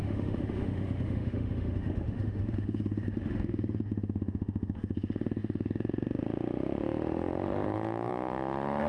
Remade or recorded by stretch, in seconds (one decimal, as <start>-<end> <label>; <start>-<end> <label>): 0.0-8.9 remade